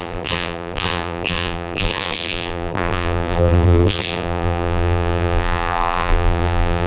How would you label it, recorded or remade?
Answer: remade